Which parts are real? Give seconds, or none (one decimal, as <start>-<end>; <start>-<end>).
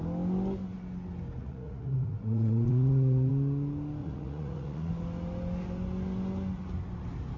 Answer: 0.0-1.4; 3.3-4.0; 4.9-7.4